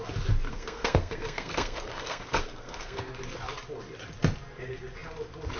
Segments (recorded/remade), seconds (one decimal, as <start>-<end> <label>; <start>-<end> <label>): 0.0-0.5 recorded; 0.5-3.0 remade; 3.0-5.6 recorded